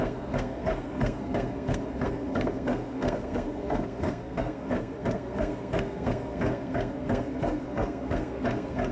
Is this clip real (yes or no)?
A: no